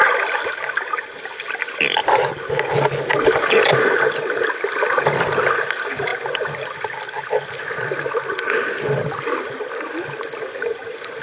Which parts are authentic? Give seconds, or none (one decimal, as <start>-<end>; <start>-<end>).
2.0-3.4; 6.1-10.5